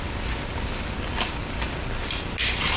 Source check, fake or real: real